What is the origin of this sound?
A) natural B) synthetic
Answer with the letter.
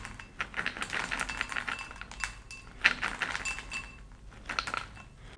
A